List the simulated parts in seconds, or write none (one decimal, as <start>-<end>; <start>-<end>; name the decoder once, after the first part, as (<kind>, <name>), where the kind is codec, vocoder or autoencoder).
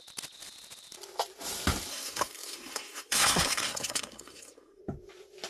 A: 1.9-4.8 (codec, SNAC)